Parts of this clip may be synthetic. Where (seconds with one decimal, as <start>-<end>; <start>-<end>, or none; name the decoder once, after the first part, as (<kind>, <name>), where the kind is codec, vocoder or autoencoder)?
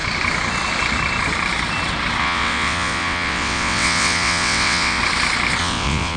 2.2-5.0 (vocoder, WaveNeXt); 5.6-6.2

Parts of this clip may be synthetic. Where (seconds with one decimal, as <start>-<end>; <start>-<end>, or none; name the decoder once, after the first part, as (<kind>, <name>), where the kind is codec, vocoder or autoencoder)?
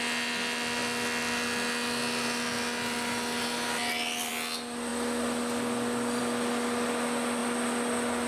none